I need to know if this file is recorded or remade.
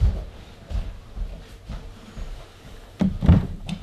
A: recorded